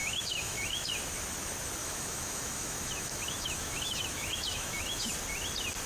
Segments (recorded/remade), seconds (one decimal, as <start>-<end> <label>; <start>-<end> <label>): 0.0-0.9 remade; 0.9-1.8 recorded; 1.8-5.1 remade; 5.1-5.9 recorded